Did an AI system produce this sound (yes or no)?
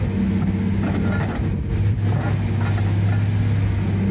no